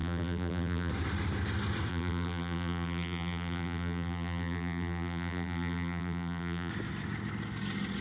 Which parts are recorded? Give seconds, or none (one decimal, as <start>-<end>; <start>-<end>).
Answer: 0.9-1.9; 6.7-8.0